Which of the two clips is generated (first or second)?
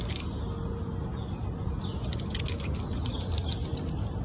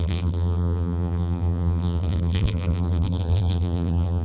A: second